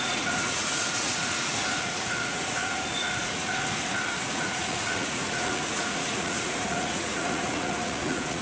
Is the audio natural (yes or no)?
no